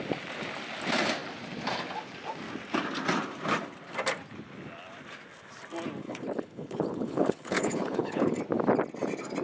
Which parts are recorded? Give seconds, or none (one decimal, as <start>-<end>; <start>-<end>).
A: 0.0-6.0; 8.3-9.4